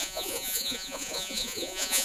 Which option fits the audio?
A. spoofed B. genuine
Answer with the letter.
A